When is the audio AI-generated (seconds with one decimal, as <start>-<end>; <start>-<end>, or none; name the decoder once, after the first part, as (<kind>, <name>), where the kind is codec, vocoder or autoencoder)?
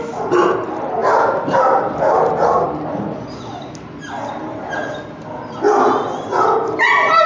none